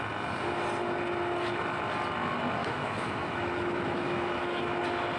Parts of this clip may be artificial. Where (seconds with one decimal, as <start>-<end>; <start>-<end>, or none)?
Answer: 2.6-4.8